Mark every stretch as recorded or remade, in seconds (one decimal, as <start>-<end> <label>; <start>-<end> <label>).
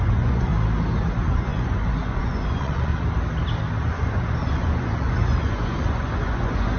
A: 0.0-0.5 remade; 0.5-1.0 recorded; 1.0-2.9 remade; 2.9-3.9 recorded; 3.9-6.8 remade